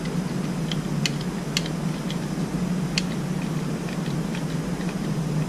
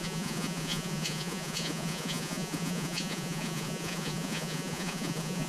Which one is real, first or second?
first